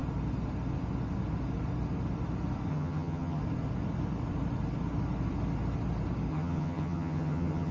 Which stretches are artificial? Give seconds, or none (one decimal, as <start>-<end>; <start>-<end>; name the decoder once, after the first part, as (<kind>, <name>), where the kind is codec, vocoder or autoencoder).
2.7-3.4 (vocoder, HiFi-GAN); 6.3-7.7